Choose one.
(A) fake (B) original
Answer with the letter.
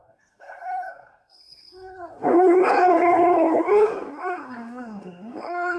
A